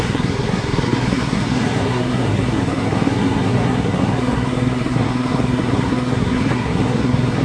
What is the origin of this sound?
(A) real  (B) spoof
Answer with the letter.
B